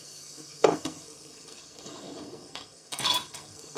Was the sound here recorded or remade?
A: remade